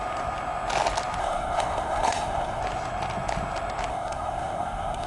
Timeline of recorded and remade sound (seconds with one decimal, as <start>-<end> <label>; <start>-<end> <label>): 0.0-1.2 recorded; 1.2-2.6 remade; 2.6-3.9 recorded; 3.9-5.1 remade